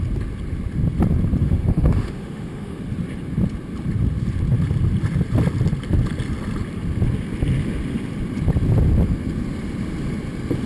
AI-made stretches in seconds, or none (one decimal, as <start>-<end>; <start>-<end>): 1.4-2.8